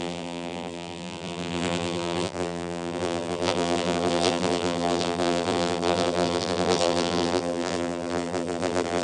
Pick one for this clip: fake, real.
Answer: fake